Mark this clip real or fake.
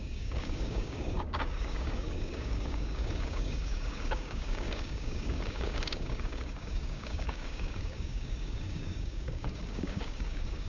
fake